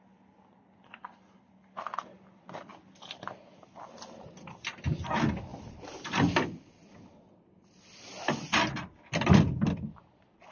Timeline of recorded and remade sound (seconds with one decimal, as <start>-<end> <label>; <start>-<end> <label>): 0.0-10.5 recorded